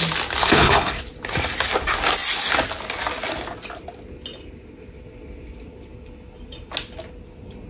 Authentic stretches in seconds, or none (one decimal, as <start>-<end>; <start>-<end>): 0.0-0.4; 1.0-7.7